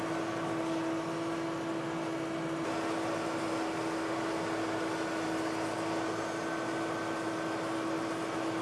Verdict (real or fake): real